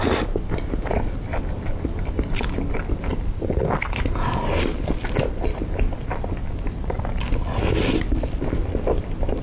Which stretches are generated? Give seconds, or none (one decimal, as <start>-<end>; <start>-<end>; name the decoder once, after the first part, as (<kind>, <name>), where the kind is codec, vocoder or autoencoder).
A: 3.1-3.8 (vocoder, BigVGAN v2)